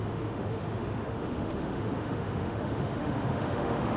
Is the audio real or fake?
fake